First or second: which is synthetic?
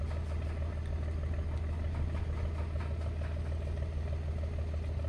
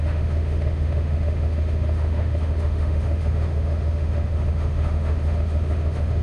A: second